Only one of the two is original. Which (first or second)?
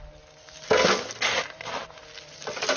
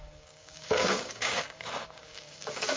first